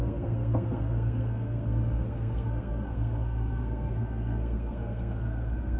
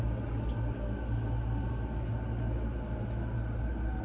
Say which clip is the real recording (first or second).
second